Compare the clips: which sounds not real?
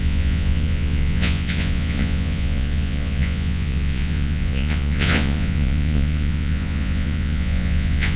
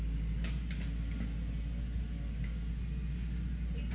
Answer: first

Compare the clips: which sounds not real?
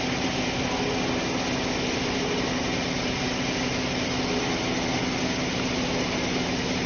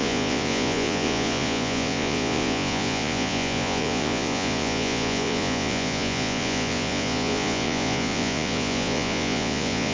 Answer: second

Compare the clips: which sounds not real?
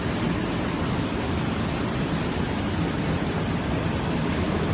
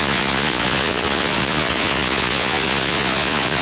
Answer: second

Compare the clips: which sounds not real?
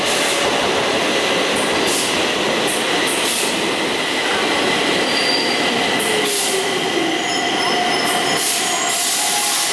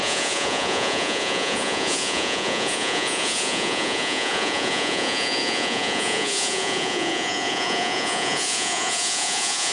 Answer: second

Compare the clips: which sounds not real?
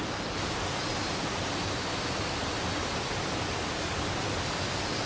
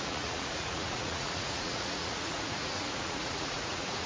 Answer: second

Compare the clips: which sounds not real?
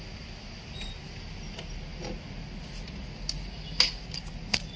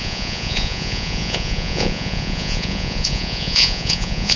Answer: second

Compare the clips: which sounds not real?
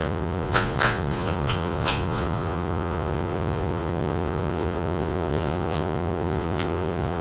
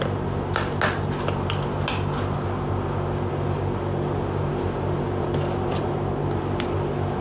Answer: first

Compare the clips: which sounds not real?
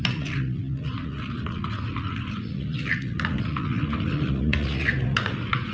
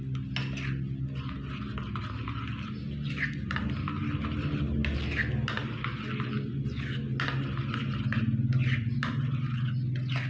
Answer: first